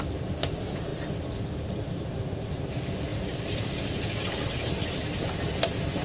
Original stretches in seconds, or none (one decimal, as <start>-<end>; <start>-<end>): 0.0-0.9; 2.5-6.0